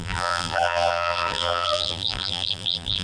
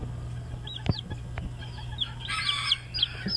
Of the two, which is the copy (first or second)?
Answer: first